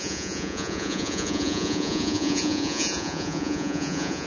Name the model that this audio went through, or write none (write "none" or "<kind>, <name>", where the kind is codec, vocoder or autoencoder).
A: vocoder, Vocos